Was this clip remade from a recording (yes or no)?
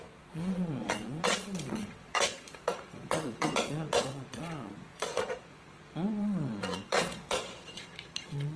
yes